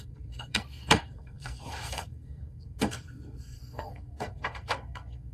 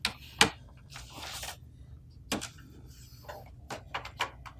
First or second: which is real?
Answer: second